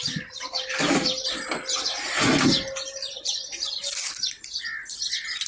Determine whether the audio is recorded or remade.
recorded